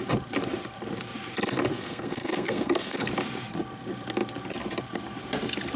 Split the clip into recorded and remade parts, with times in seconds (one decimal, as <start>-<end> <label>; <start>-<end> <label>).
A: 0.0-1.7 recorded; 1.7-3.1 remade; 3.1-5.8 recorded